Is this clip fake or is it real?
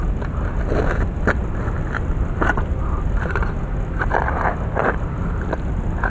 real